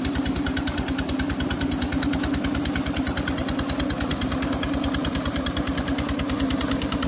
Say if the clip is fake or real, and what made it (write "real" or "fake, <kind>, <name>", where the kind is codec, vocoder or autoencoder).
real